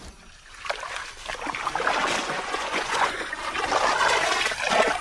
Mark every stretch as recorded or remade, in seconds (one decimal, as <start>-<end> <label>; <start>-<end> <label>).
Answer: 0.0-2.2 recorded; 2.2-3.4 remade; 3.4-5.0 recorded